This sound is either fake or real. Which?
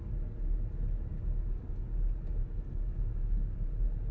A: real